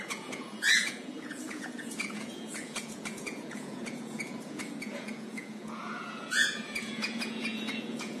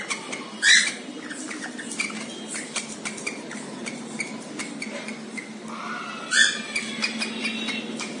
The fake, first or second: first